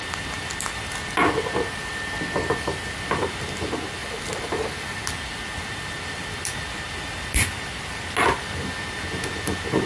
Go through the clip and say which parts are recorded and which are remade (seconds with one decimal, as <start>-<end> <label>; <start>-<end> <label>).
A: 0.0-4.0 recorded; 4.0-5.0 remade; 5.0-9.9 recorded